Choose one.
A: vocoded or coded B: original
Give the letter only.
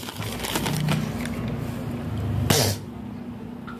B